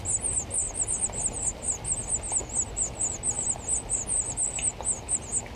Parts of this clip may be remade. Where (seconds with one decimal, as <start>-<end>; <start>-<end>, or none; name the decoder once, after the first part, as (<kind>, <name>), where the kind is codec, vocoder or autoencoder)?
none